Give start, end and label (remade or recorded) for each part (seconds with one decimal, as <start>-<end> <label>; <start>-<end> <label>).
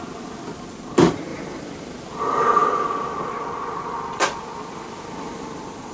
0.0-5.9 recorded